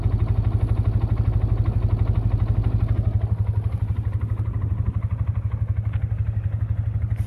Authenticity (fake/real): real